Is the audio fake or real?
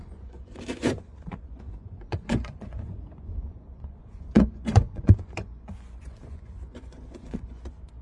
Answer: fake